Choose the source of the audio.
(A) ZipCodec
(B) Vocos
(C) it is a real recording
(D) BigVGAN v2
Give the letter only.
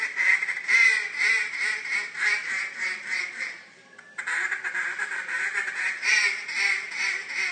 C